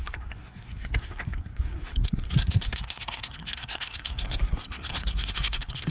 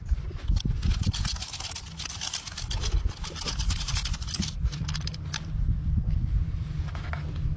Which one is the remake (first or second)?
first